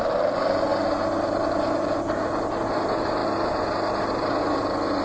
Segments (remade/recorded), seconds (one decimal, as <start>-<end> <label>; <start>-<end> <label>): 0.0-5.0 recorded